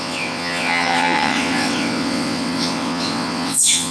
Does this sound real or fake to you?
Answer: fake